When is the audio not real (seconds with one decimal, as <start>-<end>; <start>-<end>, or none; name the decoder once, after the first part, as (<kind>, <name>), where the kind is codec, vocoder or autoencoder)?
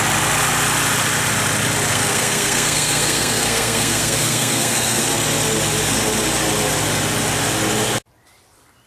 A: 1.9-5.0 (codec, SNAC)